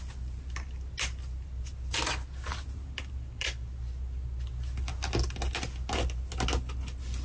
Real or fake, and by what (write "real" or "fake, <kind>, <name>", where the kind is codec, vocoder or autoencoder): real